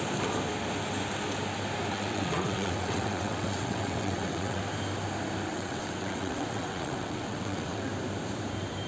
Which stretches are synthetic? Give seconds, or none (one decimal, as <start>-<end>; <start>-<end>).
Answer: 1.9-4.6; 5.5-7.9